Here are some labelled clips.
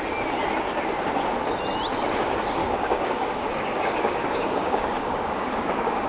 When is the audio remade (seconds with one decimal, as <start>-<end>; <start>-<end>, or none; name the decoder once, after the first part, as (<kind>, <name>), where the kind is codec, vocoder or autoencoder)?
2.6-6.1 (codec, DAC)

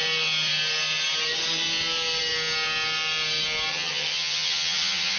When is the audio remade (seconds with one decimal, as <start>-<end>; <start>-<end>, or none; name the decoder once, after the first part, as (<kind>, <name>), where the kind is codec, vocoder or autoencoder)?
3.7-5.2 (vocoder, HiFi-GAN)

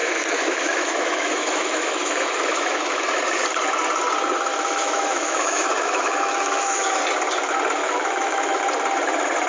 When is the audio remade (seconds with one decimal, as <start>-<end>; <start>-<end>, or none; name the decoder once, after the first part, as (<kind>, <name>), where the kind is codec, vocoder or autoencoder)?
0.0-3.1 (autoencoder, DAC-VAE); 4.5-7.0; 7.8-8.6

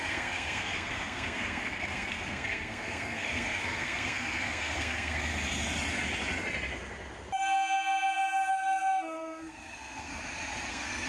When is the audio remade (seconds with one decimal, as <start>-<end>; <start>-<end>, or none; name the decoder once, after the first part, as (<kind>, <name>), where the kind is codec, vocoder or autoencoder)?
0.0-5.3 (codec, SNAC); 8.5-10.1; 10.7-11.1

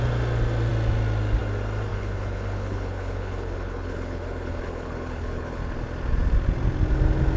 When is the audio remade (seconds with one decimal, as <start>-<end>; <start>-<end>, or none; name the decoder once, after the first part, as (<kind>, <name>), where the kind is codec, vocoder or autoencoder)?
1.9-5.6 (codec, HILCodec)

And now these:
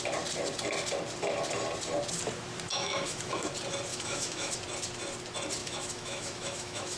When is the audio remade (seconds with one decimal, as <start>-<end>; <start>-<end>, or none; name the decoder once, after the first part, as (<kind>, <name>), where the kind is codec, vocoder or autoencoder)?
2.7-3.5 (autoencoder, DAC-VAE); 3.9-4.5; 5.6-7.0

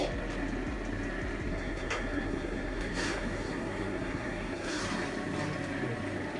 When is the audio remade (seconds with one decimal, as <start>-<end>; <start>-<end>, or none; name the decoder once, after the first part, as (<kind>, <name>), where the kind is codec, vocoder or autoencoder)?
1.5-4.8 (codec, SNAC)